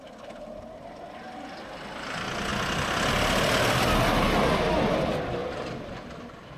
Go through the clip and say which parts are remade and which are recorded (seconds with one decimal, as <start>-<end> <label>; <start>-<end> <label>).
0.0-5.4 recorded; 5.4-5.9 remade; 5.9-6.6 recorded